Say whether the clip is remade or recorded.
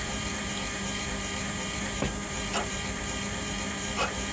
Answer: remade